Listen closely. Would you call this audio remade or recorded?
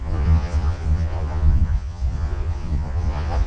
remade